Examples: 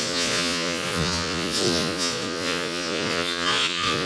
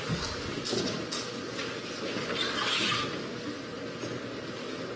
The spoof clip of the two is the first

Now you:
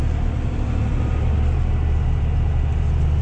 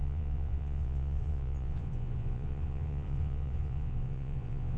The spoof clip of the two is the second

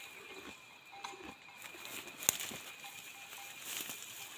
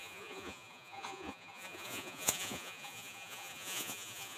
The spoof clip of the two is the second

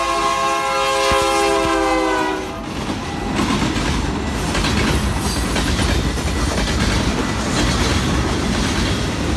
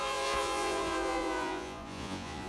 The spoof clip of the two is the second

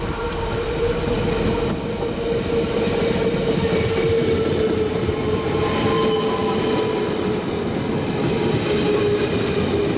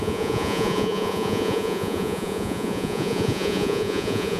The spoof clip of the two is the second